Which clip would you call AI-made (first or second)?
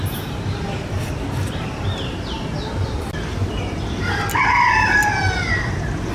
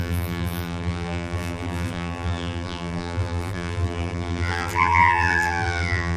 second